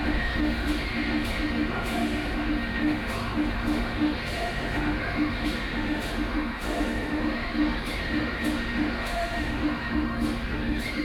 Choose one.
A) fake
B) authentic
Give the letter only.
A